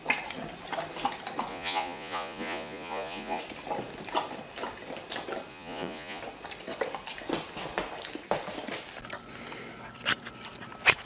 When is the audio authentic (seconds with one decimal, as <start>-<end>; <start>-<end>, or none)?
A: 0.0-1.5; 3.4-5.5; 6.2-11.1